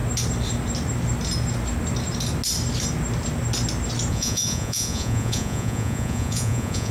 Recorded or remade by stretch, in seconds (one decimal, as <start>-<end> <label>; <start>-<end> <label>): 0.0-4.1 recorded; 4.1-6.9 remade

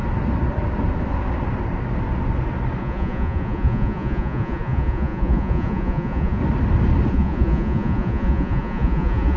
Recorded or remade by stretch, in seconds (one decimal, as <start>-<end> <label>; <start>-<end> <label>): 0.0-2.8 recorded; 2.8-6.4 remade; 6.4-7.1 recorded; 7.1-9.4 remade

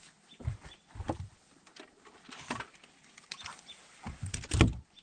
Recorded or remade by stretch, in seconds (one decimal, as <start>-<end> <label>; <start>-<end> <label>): 0.0-5.0 recorded

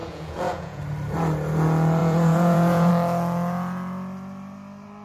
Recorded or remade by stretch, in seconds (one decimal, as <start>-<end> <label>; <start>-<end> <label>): 0.0-0.8 remade; 0.8-2.0 recorded; 2.0-2.9 remade; 2.9-5.0 recorded